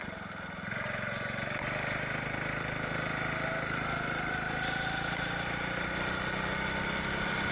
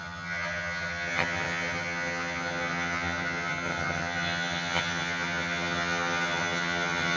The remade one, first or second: second